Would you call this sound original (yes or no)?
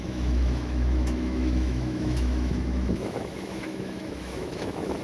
no